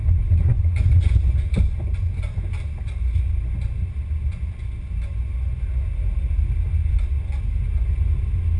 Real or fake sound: real